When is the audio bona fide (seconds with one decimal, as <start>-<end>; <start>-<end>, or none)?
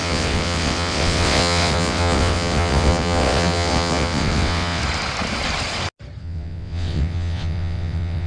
4.8-6.2